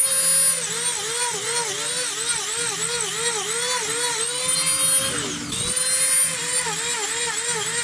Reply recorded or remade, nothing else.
recorded